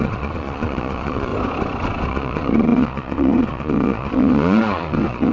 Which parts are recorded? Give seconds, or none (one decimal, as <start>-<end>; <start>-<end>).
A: 1.3-2.1